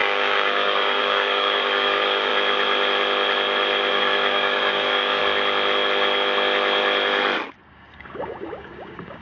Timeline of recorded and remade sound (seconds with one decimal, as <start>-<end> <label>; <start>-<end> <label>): 0.0-2.3 remade; 2.3-3.9 recorded; 3.9-5.2 remade; 5.2-7.7 recorded; 7.7-9.2 remade